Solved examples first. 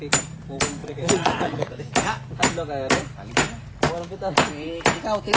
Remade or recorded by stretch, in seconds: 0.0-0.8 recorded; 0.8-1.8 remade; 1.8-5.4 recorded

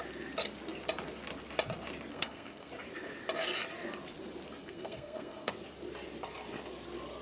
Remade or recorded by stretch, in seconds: 0.0-2.1 recorded; 2.1-2.7 remade; 2.7-4.6 recorded; 4.6-5.5 remade; 5.5-7.2 recorded